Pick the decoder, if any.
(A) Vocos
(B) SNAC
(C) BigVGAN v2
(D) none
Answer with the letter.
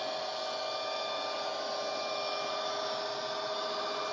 D